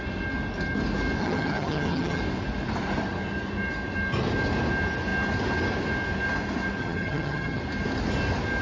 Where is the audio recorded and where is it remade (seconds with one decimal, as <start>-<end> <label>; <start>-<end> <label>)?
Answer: 0.0-1.2 recorded; 1.2-2.2 remade; 2.2-6.8 recorded; 6.8-7.6 remade; 7.6-8.6 recorded